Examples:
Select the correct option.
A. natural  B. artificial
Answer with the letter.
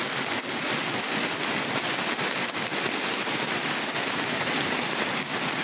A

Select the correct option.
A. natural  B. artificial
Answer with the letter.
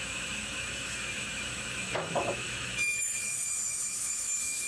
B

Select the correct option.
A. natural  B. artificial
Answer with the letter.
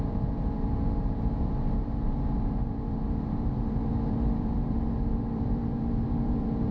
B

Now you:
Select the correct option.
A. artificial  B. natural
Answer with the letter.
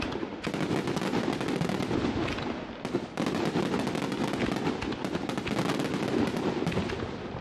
B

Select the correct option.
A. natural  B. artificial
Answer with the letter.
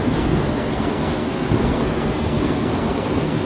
B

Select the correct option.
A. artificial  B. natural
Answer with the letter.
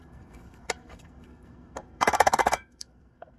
A